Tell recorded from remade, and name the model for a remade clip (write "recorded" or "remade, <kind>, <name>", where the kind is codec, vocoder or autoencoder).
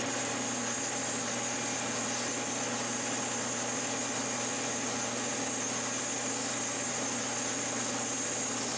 recorded